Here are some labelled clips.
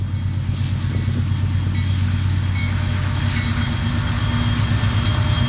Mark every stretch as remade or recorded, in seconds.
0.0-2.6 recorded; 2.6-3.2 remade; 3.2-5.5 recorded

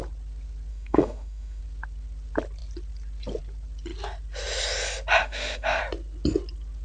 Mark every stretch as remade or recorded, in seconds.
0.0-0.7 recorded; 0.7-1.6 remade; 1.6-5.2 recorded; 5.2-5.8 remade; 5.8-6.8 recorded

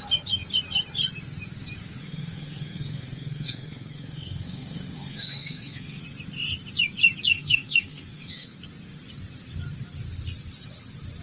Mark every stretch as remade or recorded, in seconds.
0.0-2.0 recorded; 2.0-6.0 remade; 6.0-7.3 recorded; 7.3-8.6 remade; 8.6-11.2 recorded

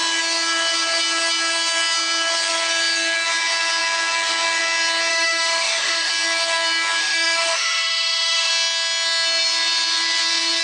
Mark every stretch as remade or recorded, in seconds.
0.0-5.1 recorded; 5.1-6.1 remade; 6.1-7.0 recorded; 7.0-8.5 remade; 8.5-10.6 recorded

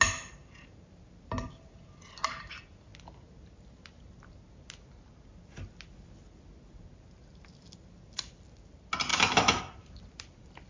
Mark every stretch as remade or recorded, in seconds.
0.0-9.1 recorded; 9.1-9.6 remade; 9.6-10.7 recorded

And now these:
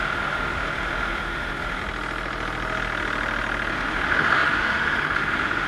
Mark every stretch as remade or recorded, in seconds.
0.0-1.8 remade; 1.8-3.7 recorded; 3.7-5.7 remade

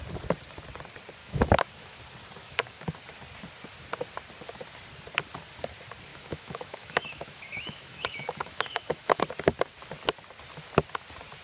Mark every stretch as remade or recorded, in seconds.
0.0-1.2 recorded; 1.2-2.0 remade; 2.0-2.4 recorded; 2.4-2.9 remade; 2.9-6.1 recorded; 6.1-9.2 remade; 9.2-11.4 recorded

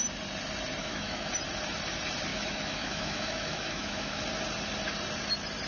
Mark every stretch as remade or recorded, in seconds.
0.0-0.8 recorded; 0.8-1.3 remade; 1.3-2.3 recorded; 2.3-4.2 remade; 4.2-5.7 recorded